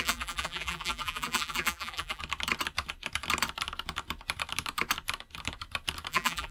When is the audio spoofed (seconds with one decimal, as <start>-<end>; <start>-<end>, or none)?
0.0-2.2; 6.1-6.5